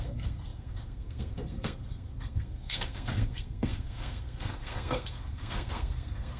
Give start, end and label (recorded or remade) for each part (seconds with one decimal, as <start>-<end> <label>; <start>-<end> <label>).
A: 0.0-6.4 remade